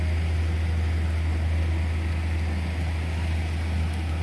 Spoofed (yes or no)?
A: no